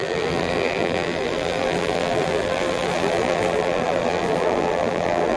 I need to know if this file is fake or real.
fake